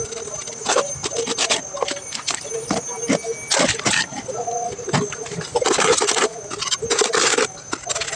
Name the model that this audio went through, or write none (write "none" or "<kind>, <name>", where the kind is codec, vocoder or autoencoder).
none